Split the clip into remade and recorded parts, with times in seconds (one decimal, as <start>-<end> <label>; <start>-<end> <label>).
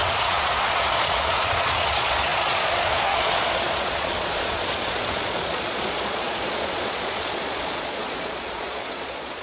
0.0-9.4 remade